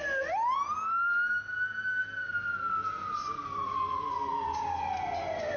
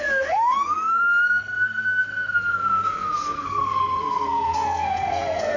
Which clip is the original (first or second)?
first